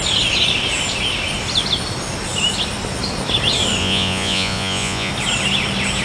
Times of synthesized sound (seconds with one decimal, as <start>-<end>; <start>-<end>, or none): 3.8-5.1